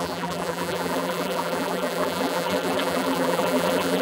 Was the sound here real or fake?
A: fake